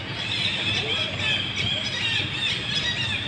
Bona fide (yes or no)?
yes